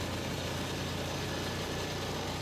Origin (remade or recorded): recorded